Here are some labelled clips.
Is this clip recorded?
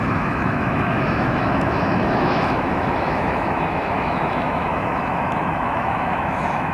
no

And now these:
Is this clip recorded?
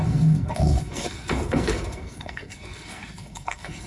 no